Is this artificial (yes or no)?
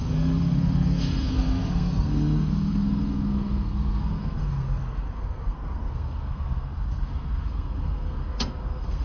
yes